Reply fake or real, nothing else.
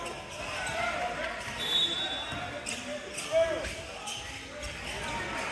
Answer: real